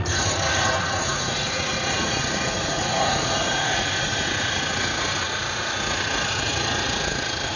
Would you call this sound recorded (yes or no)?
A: no